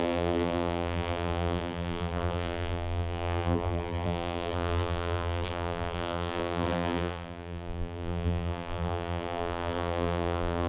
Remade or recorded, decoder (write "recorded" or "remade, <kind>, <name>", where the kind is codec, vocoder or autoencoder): remade, vocoder, BigVGAN v2